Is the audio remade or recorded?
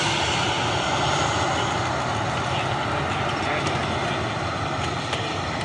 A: recorded